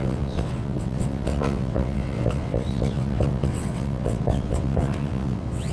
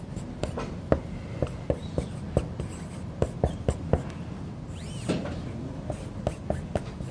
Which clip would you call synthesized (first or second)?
first